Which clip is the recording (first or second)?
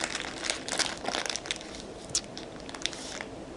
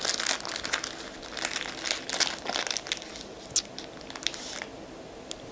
second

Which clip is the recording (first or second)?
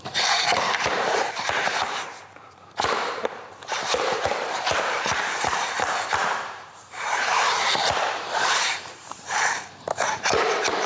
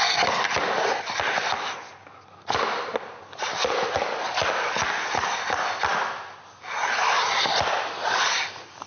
second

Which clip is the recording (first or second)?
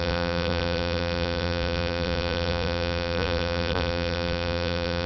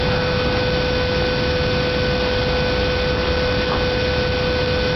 second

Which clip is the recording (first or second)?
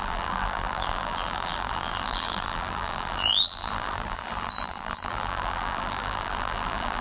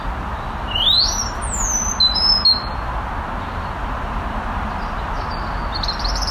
second